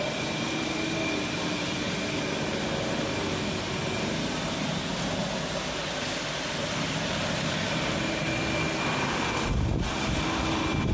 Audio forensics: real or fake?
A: real